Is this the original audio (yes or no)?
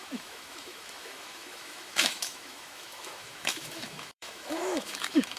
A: no